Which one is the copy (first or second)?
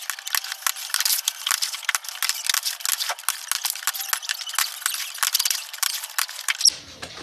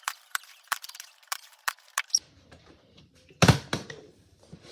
second